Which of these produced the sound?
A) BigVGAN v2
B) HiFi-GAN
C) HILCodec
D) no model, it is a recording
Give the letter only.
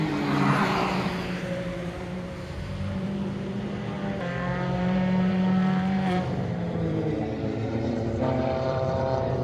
A